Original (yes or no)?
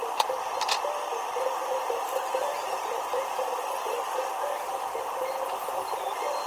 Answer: no